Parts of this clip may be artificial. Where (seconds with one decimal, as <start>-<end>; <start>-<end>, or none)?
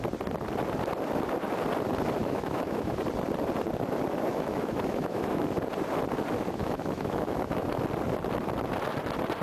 2.2-3.0; 4.3-5.4; 6.6-7.8